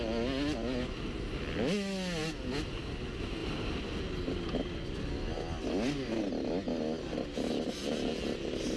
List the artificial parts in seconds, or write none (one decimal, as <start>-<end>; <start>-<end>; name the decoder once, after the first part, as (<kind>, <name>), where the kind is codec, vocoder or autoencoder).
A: none